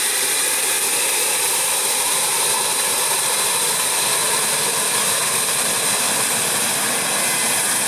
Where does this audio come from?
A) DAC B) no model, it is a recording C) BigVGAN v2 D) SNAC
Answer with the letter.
B